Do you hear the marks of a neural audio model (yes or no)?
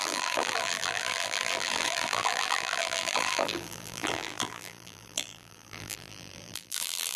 yes